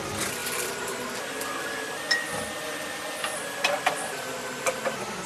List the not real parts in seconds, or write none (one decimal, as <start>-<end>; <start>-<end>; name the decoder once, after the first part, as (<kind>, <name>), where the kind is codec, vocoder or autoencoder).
none